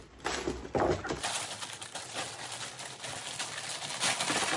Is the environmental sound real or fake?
real